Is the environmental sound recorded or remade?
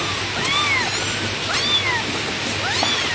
recorded